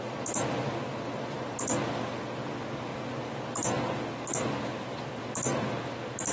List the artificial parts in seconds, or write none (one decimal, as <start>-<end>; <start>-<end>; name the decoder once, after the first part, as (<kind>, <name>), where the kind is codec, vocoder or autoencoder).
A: none